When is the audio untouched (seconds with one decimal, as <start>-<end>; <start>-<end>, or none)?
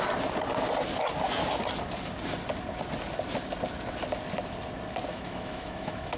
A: 0.0-5.1